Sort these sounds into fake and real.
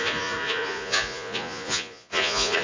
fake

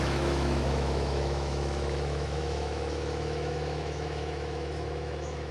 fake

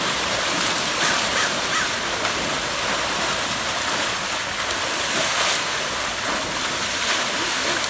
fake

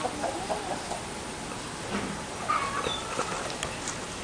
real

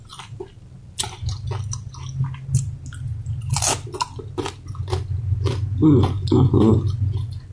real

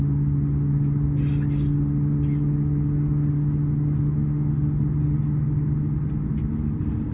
real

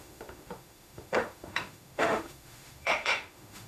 fake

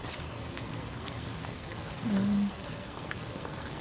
fake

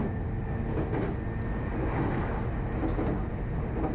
real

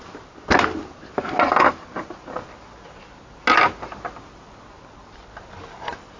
real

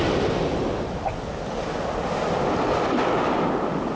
real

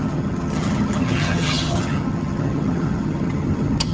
fake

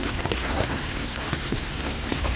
fake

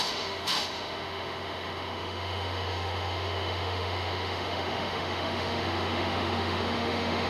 fake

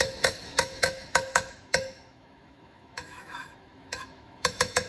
fake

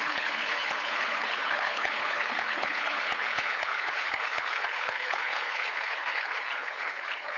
fake